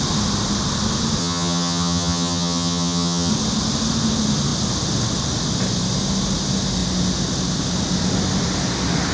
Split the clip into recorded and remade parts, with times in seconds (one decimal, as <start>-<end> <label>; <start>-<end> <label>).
0.0-1.2 recorded; 1.2-3.3 remade; 3.3-9.1 recorded